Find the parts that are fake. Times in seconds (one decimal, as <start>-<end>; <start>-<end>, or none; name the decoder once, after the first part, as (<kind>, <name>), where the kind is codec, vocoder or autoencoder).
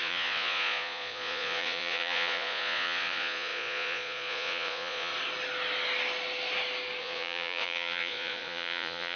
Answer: 0.0-5.1 (vocoder, Vocos); 7.0-9.2